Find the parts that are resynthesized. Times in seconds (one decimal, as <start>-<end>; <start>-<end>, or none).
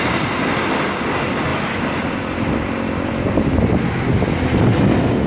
none